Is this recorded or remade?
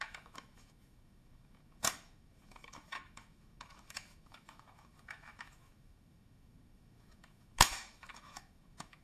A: remade